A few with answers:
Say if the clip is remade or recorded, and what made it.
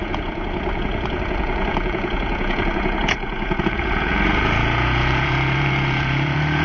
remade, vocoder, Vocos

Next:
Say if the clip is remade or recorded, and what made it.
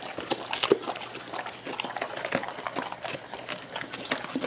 recorded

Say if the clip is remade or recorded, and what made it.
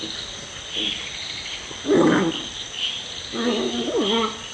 recorded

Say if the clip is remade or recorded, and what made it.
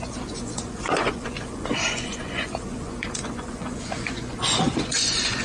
remade, vocoder, Vocos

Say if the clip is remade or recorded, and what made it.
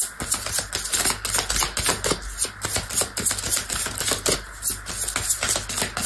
recorded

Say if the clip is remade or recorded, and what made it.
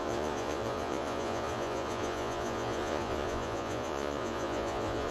remade, vocoder, Vocos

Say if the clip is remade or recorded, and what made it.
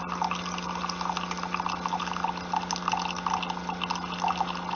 recorded